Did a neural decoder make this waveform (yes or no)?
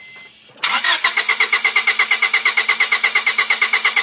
no